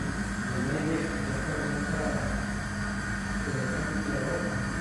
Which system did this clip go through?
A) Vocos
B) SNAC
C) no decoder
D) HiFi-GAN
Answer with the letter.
C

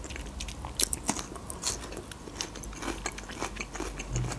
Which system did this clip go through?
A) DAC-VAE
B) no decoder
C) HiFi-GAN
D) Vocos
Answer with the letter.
B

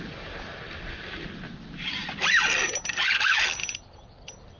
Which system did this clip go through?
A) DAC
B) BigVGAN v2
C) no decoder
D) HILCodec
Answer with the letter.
C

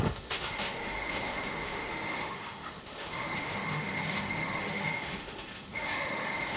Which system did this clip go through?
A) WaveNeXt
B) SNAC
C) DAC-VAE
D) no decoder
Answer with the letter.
C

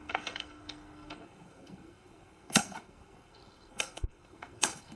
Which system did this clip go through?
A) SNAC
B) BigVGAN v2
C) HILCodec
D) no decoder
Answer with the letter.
A